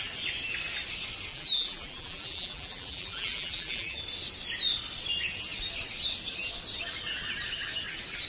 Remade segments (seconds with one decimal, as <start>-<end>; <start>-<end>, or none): 1.3-4.0